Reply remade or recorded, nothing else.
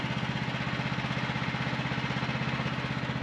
recorded